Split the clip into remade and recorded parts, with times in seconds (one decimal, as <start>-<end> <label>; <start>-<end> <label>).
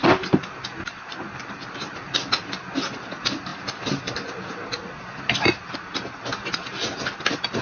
0.0-7.6 recorded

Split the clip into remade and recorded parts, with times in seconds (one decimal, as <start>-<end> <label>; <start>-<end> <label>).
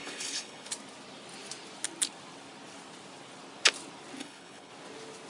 0.0-0.7 remade; 0.7-4.2 recorded; 4.2-4.7 remade; 4.7-5.3 recorded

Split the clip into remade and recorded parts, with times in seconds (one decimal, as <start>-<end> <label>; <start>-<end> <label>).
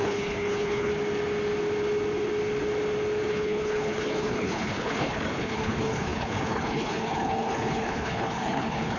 0.0-0.9 remade; 0.9-3.3 recorded; 3.3-9.0 remade